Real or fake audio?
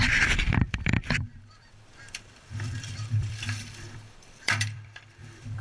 fake